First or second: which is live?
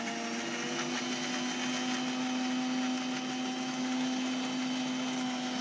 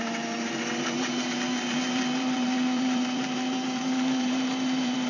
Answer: first